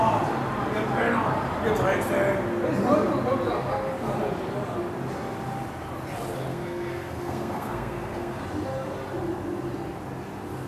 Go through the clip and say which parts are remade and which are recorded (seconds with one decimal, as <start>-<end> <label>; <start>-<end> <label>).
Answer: 0.0-6.5 recorded; 6.5-8.4 remade; 8.4-10.7 recorded